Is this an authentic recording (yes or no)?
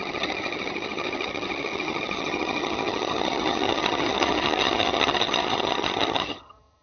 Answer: no